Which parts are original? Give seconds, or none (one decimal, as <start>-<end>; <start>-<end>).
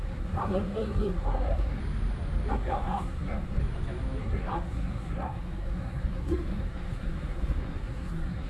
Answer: 1.8-2.5; 3.6-4.2